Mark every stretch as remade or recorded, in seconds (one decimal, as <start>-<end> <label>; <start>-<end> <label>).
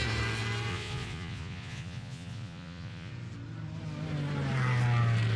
0.0-0.7 recorded; 0.7-3.1 remade; 3.1-5.4 recorded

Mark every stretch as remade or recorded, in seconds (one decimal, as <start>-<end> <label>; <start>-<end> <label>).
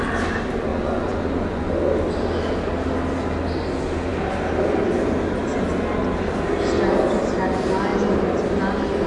0.0-0.7 recorded; 0.7-1.7 remade; 1.7-9.1 recorded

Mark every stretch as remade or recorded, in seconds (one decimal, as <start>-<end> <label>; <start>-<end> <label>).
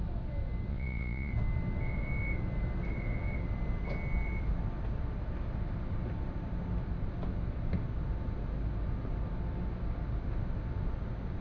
0.0-0.7 recorded; 0.7-1.3 remade; 1.3-11.4 recorded